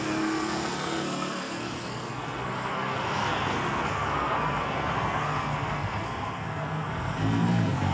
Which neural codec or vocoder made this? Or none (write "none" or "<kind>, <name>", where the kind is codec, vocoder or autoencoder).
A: codec, SNAC